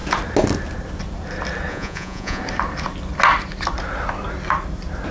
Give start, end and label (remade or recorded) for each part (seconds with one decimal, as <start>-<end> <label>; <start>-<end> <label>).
0.0-1.7 recorded; 1.7-2.4 remade; 2.4-5.1 recorded